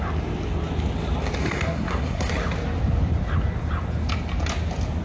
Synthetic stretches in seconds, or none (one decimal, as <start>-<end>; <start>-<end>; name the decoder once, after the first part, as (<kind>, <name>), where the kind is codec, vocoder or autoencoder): 1.4-2.3 (codec, SNAC)